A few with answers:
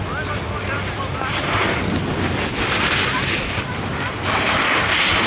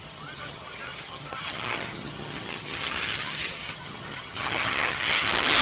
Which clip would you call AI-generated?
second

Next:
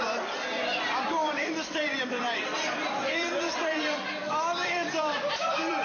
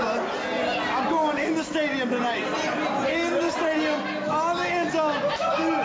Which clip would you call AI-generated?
first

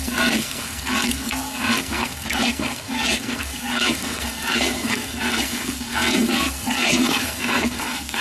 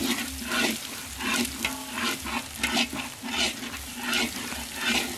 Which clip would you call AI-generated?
first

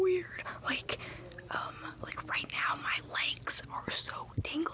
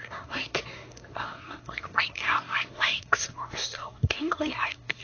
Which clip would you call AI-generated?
second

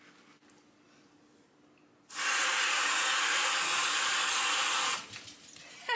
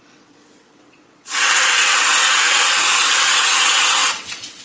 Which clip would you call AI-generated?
second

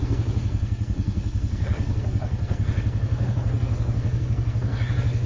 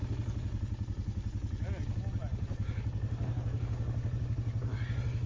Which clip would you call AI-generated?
first